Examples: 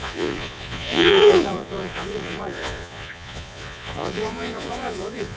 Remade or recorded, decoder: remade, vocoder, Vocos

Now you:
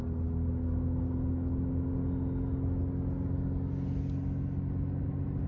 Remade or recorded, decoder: recorded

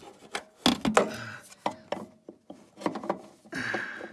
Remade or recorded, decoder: recorded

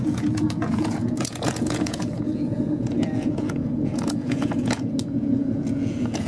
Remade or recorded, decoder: remade, vocoder, Vocos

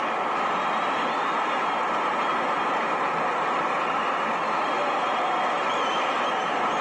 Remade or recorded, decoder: recorded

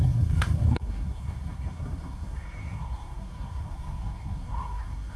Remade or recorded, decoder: remade, codec, SNAC